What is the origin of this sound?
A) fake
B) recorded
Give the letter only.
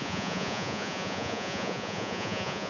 A